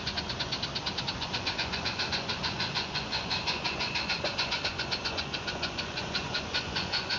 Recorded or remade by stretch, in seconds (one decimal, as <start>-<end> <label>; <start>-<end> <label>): 0.0-0.5 remade; 0.5-1.0 recorded; 1.0-7.2 remade